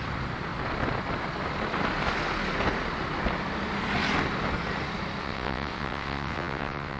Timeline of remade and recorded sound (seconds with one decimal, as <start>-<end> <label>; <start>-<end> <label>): 0.0-5.2 recorded; 5.2-7.0 remade